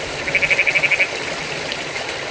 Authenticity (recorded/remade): recorded